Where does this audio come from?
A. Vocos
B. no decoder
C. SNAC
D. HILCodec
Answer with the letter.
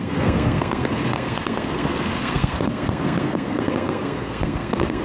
C